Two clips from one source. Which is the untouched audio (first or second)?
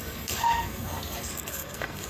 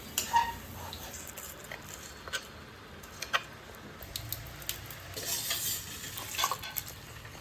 second